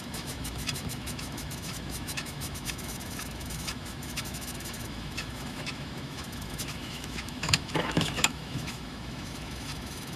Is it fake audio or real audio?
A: fake